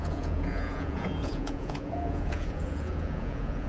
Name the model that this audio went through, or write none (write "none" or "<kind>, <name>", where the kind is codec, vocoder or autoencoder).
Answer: vocoder, Vocos